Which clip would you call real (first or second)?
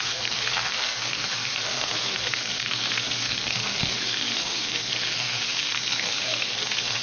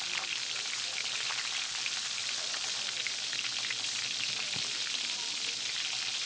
second